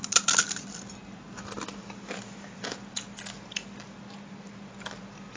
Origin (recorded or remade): recorded